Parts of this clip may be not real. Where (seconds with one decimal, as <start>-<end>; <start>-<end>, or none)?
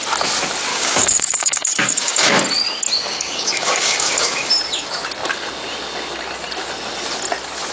0.7-2.4; 3.1-4.5